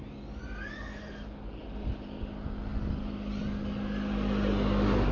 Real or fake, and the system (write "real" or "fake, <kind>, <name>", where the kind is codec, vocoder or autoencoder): real